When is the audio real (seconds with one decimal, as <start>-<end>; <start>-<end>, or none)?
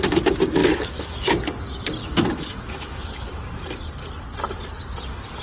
0.0-0.6; 1.3-2.0; 3.3-5.4